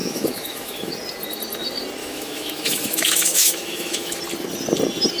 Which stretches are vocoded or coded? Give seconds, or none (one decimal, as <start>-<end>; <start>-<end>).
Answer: 0.0-0.9; 2.0-4.2